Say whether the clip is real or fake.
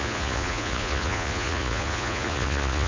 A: fake